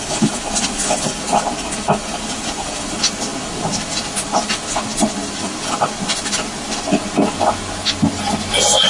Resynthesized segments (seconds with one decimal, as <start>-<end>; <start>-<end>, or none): none